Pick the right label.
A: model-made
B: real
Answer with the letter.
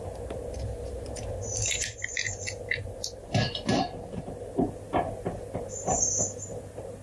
B